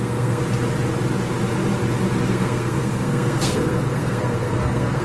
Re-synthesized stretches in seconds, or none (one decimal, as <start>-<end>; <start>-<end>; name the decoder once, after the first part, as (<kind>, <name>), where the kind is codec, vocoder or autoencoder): 0.0-0.4 (codec, SNAC); 2.3-5.0